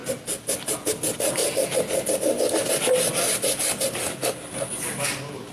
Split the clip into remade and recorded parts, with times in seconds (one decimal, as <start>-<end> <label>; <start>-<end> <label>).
0.0-5.5 recorded